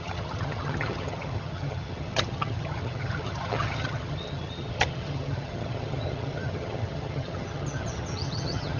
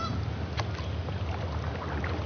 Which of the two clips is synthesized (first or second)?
first